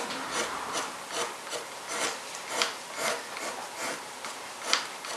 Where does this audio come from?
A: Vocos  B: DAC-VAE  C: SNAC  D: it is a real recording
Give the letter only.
D